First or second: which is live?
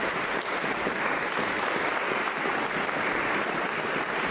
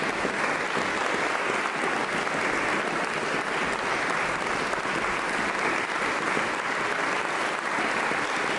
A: second